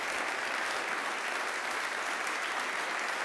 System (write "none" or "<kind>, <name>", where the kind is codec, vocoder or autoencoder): none